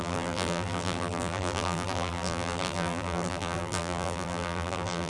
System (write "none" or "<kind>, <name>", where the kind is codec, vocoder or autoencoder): vocoder, BigVGAN v2